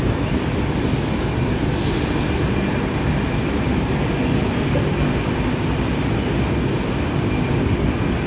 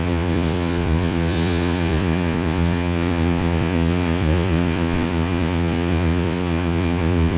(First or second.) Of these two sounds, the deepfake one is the second